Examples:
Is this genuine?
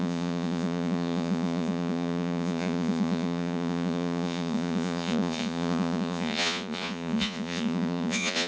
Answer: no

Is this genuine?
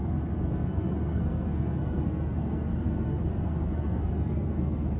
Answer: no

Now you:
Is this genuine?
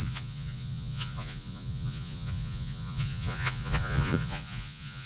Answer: no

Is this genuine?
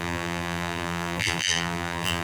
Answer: no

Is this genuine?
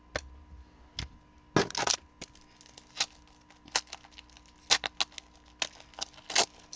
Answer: yes